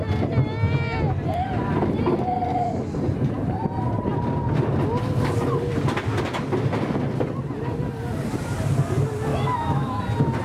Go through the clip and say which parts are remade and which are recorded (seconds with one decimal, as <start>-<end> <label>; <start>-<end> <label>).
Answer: 0.0-9.3 recorded; 9.3-10.0 remade; 10.0-10.4 recorded